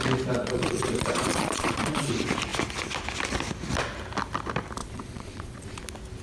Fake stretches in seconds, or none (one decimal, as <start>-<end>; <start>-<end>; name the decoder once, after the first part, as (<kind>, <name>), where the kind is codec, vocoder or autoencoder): 0.4-2.1 (vocoder, Vocos); 4.8-5.8